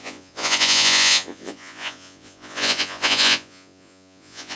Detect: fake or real fake